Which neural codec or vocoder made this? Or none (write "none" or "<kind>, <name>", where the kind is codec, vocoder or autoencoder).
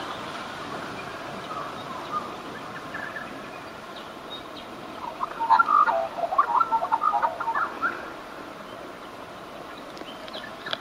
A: none